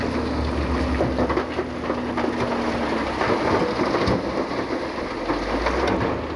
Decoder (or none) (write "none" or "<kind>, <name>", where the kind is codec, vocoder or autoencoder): none